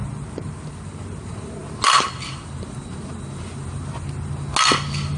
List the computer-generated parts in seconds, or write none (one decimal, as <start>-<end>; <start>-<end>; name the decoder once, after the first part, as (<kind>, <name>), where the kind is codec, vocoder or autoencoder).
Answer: none